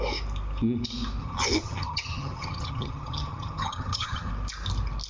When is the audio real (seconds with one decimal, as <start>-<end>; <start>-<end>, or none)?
0.0-1.2; 4.3-5.1